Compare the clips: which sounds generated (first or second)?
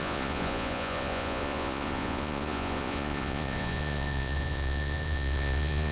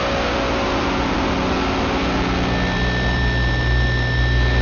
first